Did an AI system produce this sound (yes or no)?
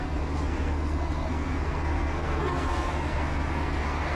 yes